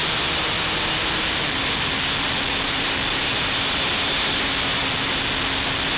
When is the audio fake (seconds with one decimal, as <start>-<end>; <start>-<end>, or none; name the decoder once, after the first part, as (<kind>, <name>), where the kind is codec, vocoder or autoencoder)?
none